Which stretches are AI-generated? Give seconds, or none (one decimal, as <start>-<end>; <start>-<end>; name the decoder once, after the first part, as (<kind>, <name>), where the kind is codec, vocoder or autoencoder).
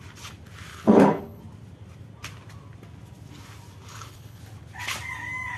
0.7-1.4 (codec, HILCodec); 3.9-4.4